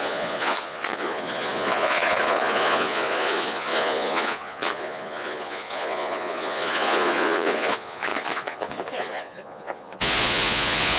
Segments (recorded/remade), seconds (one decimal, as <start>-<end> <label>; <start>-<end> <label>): 0.0-11.0 remade